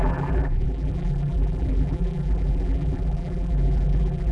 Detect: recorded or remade remade